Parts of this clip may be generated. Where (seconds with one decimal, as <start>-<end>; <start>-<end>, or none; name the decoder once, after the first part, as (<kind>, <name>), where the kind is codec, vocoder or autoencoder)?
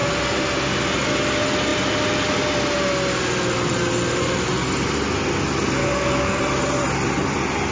5.8-6.4 (codec, DAC)